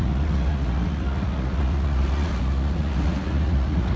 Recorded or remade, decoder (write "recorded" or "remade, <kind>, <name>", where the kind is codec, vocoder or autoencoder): remade, vocoder, Vocos